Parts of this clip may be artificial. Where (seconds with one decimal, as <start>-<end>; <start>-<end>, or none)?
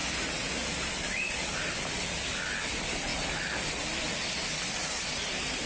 none